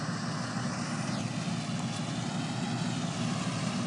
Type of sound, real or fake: real